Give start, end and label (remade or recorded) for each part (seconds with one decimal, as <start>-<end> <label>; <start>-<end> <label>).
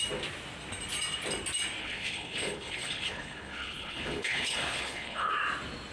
0.0-1.8 recorded; 1.8-5.3 remade; 5.3-5.9 recorded